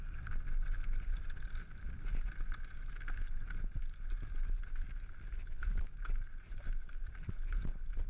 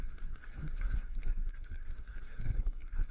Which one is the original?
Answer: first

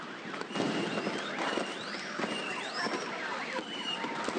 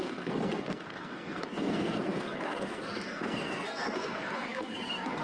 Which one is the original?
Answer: first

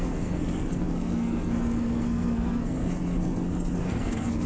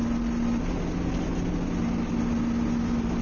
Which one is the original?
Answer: second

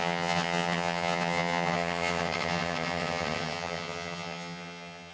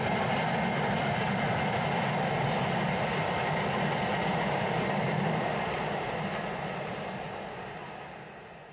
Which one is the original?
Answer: second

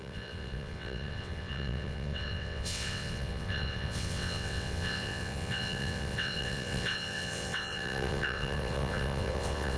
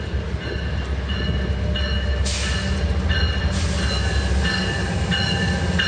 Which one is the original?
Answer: second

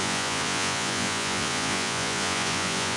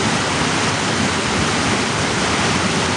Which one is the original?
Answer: second